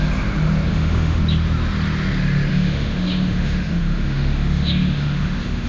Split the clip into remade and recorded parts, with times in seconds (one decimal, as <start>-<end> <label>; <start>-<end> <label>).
0.0-0.7 recorded; 0.7-1.2 remade; 1.2-2.5 recorded; 2.5-5.7 remade